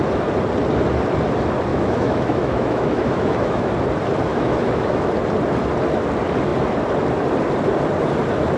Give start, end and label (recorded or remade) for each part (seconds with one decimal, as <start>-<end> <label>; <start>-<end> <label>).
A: 0.0-1.7 recorded; 1.7-3.7 remade; 3.7-4.3 recorded; 4.3-5.1 remade; 5.1-8.6 recorded